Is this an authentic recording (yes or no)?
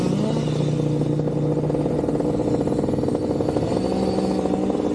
yes